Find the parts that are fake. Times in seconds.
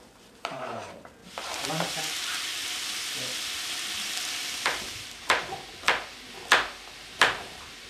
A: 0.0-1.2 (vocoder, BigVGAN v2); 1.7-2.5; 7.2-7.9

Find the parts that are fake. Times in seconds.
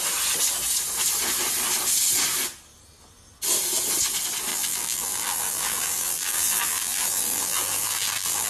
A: 4.5-8.5 (vocoder, BigVGAN v2)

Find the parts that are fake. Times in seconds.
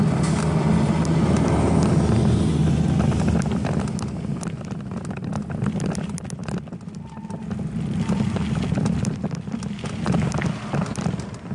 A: none